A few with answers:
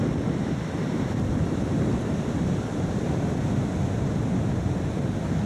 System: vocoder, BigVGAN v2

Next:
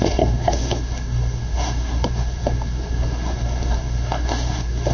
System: codec, SNAC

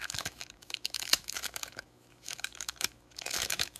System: autoencoder, DAC-VAE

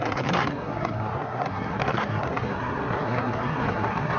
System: codec, SNAC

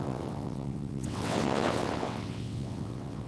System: vocoder, WaveNeXt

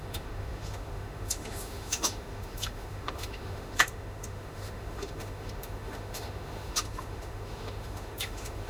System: autoencoder, DAC-VAE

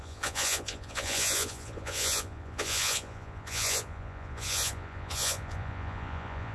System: vocoder, Vocos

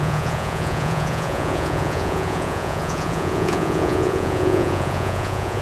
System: vocoder, Vocos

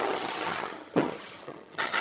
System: vocoder, HiFi-GAN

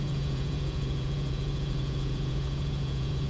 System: vocoder, Vocos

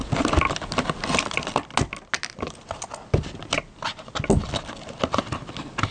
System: none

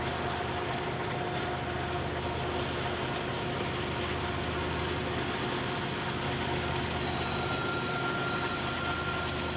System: none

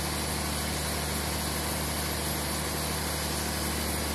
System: none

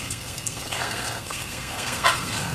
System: codec, SNAC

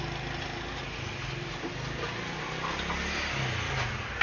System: none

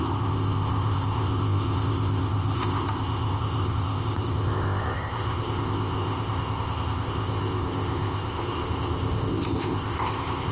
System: codec, ZipCodec